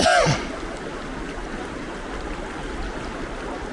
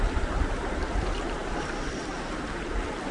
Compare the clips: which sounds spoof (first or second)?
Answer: second